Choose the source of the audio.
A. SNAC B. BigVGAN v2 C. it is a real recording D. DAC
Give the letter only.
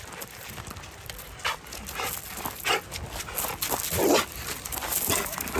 C